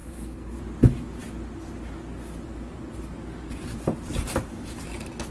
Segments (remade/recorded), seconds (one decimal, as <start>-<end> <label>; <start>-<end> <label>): 0.0-0.6 remade; 0.6-5.3 recorded